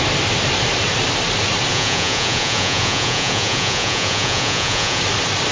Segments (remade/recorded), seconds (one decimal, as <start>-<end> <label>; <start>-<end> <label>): 0.0-1.7 recorded; 1.7-5.0 remade; 5.0-5.5 recorded